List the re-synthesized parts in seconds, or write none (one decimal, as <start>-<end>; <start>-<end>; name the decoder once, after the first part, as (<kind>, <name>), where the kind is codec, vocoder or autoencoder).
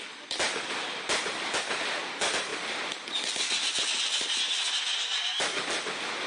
none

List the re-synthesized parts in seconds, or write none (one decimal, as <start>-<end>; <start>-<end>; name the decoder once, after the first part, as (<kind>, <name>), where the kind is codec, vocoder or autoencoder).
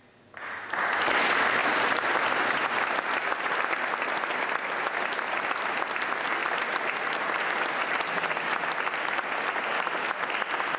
1.6-3.7 (vocoder, BigVGAN v2); 6.4-7.1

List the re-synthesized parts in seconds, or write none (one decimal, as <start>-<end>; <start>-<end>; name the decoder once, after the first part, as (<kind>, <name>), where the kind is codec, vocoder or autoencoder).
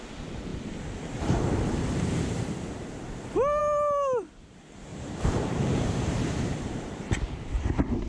4.9-7.0 (vocoder, BigVGAN v2)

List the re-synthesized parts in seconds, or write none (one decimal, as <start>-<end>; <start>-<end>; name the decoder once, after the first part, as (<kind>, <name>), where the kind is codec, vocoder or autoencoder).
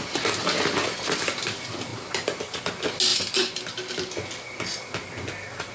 1.9-2.6 (vocoder, BigVGAN v2); 3.1-3.6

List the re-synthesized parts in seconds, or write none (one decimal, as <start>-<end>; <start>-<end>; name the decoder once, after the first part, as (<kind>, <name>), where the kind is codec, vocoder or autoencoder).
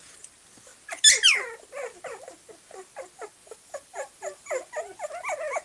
3.4-4.7 (vocoder, BigVGAN v2)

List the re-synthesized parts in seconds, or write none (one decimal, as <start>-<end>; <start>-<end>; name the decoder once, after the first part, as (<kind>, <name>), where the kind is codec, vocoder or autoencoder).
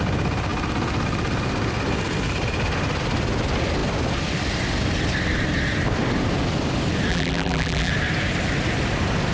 7.1-7.9 (vocoder, BigVGAN v2)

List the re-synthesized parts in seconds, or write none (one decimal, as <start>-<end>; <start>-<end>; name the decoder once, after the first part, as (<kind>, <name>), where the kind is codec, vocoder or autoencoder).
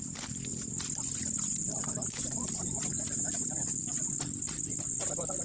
1.5-4.1 (vocoder, BigVGAN v2)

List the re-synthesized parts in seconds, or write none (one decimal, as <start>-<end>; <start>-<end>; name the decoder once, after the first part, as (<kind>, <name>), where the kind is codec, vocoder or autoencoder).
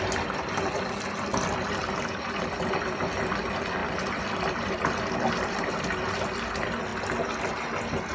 0.0-1.3 (vocoder, BigVGAN v2); 3.4-8.1